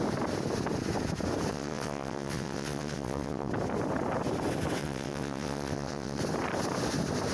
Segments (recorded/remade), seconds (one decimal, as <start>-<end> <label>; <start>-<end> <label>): 0.0-1.5 recorded; 1.5-3.5 remade; 3.5-4.8 recorded; 4.8-6.2 remade; 6.2-7.3 recorded